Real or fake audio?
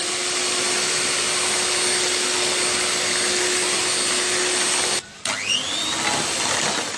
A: real